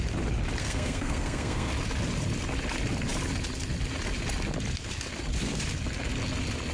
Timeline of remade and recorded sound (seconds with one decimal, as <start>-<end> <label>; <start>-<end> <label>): 0.0-0.6 recorded; 0.6-1.7 remade; 1.7-6.7 recorded